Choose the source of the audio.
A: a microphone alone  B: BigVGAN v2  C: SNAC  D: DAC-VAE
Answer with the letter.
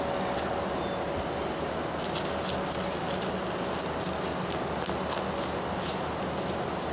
A